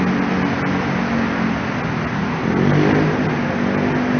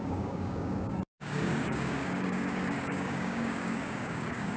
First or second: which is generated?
second